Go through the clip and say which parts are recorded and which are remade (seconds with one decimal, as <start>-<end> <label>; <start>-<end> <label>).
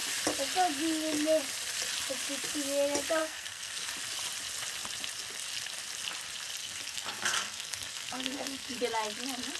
0.0-3.2 recorded; 3.2-3.9 remade; 3.9-6.6 recorded; 6.6-8.8 remade; 8.8-9.6 recorded